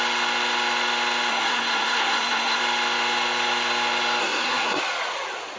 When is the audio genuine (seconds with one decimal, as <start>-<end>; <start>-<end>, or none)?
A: 0.0-1.3; 2.6-4.2; 4.8-5.6